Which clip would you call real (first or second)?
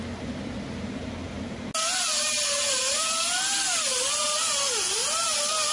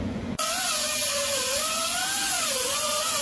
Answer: first